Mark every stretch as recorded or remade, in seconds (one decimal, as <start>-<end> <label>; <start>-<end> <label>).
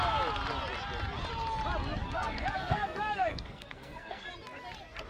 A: 0.0-2.0 recorded; 2.0-4.3 remade; 4.3-5.1 recorded